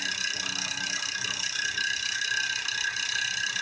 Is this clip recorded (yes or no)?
yes